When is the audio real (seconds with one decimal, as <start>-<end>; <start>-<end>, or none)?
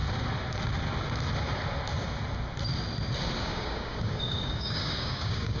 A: 0.0-3.4